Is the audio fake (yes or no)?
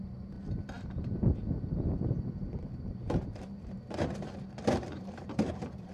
yes